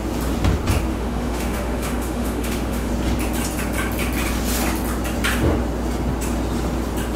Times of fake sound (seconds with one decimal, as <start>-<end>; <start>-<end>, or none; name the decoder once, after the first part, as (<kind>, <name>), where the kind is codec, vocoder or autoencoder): 0.9-2.9 (autoencoder, DAC-VAE)